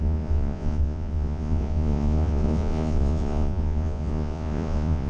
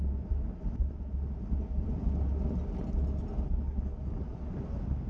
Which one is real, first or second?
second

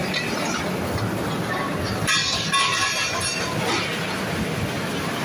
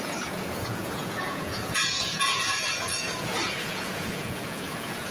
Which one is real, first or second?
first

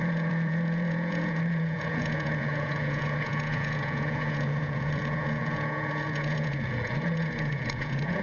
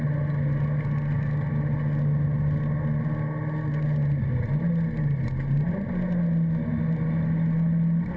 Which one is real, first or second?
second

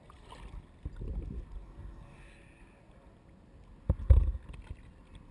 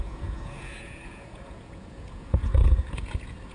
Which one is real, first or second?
first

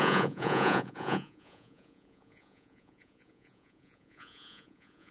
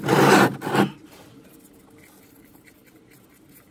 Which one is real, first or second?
second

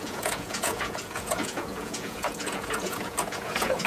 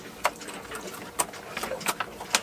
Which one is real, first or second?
second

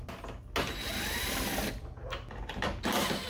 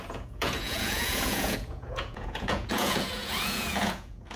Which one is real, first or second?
first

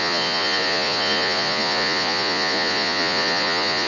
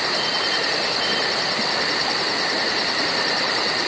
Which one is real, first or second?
second